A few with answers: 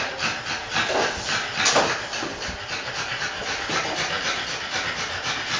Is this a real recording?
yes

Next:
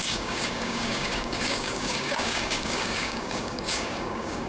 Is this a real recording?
no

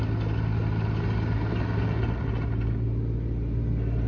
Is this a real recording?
yes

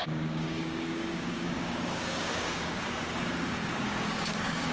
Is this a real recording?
no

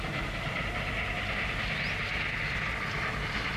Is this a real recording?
yes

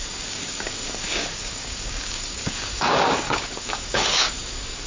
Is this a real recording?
no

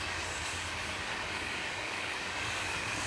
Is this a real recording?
no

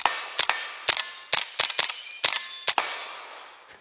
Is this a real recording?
yes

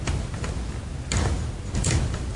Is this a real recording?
yes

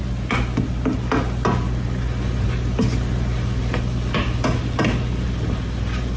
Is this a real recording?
yes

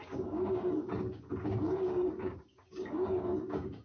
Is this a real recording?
no